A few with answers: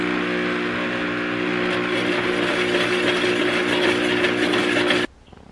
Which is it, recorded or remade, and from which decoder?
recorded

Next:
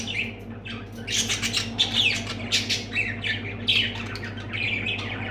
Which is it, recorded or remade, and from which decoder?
recorded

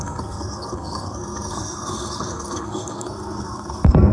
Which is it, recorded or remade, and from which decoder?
remade, codec, SNAC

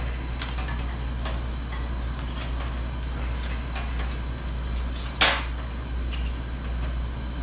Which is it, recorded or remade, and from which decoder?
recorded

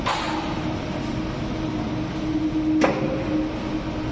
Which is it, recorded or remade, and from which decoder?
recorded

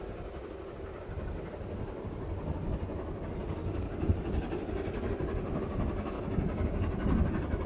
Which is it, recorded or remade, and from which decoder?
recorded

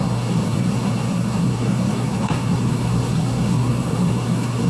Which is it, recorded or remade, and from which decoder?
remade, codec, SNAC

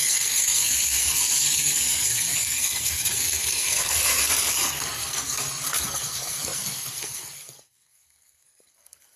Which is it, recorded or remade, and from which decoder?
remade, codec, SNAC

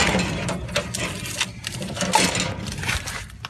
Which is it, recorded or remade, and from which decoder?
recorded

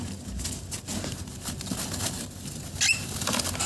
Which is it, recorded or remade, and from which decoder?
recorded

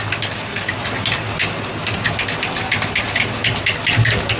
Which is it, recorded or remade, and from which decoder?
recorded